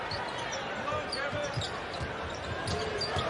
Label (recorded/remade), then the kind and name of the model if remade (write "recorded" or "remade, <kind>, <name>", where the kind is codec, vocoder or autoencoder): recorded